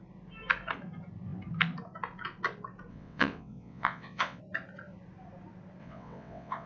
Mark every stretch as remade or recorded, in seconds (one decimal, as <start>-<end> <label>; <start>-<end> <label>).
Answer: 0.0-2.9 recorded; 2.9-4.4 remade; 4.4-5.8 recorded; 5.8-6.7 remade